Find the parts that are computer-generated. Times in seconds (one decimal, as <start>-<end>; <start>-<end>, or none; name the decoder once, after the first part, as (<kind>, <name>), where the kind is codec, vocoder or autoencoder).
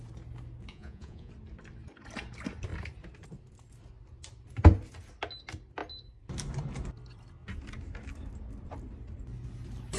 0.7-1.3 (vocoder, Vocos)